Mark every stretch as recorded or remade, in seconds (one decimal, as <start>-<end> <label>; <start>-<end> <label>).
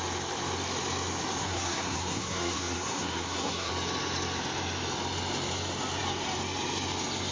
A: 0.0-1.4 recorded; 1.4-3.7 remade; 3.7-7.3 recorded